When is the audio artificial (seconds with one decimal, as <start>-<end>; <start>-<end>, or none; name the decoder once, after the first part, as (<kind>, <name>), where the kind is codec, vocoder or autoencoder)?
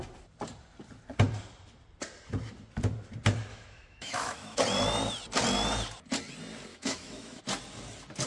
3.5-4.6 (autoencoder, DAC-VAE); 6.7-7.4